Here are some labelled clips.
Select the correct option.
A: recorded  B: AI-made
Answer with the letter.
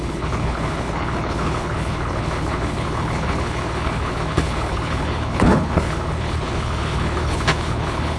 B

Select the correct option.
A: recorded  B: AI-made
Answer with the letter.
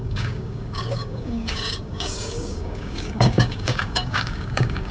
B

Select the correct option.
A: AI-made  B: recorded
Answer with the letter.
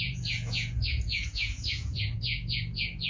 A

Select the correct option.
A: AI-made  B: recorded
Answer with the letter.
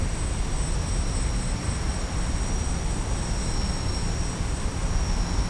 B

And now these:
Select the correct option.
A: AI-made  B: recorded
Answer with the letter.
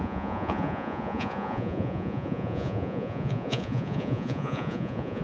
A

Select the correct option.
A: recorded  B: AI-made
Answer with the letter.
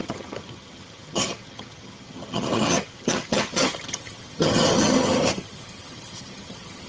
B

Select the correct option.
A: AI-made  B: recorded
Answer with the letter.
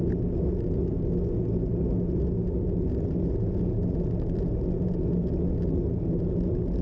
B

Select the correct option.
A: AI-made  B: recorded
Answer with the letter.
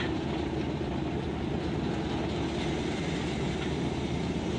B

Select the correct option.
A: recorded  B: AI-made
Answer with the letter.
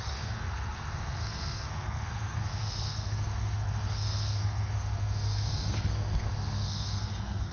B